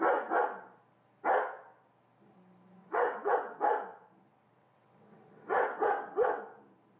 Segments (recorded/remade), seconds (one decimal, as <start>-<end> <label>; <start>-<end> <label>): 0.0-2.8 recorded; 2.8-3.6 remade; 3.6-4.3 recorded; 4.3-6.4 remade; 6.4-7.0 recorded